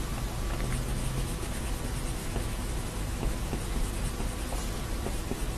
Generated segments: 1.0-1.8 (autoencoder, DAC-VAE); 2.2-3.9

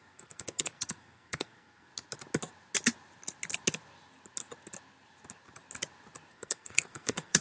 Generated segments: 0.0-1.9 (codec, SNAC); 6.3-7.4